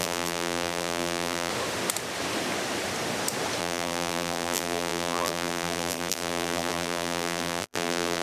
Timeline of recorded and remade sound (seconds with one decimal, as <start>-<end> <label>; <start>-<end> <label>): 0.0-1.5 remade; 1.5-3.6 recorded; 3.6-8.2 remade